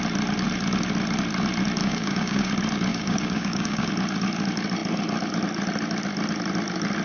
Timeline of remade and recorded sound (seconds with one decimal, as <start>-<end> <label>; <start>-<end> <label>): 0.0-1.8 recorded; 1.8-2.5 remade; 2.5-2.9 recorded; 2.9-3.9 remade; 3.9-7.0 recorded